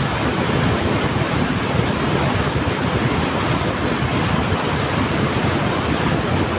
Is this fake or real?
real